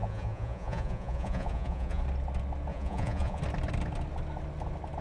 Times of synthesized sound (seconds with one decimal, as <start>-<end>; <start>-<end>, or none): 0.0-2.0; 2.7-3.4